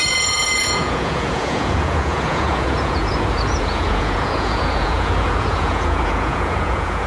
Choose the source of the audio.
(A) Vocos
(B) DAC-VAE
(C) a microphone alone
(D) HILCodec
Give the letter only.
A